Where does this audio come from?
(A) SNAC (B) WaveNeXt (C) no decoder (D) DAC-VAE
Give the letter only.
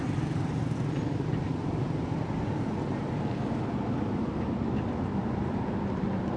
C